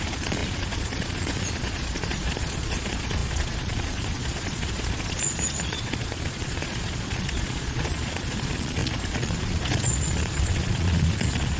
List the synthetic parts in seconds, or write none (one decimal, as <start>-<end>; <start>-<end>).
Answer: 0.0-11.6